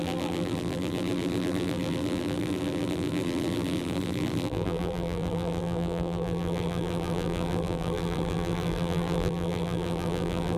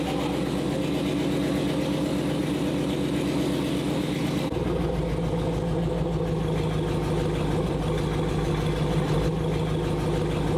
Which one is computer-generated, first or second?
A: first